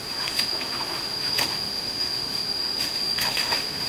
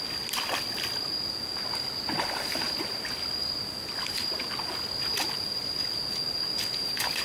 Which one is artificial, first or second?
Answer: first